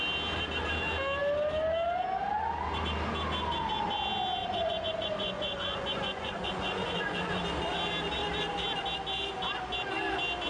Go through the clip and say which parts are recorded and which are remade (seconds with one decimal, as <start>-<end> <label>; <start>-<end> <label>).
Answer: 0.0-4.4 recorded; 4.4-7.4 remade; 7.4-10.5 recorded